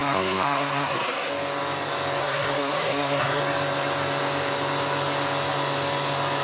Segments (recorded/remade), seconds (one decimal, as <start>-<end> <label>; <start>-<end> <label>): 0.0-1.3 remade; 1.3-2.2 recorded; 2.2-3.4 remade; 3.4-6.4 recorded